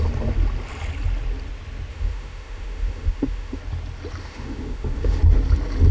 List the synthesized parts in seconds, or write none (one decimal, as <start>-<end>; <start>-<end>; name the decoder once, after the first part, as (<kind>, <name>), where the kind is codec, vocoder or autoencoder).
1.9-3.6 (autoencoder, DAC-VAE); 4.2-5.2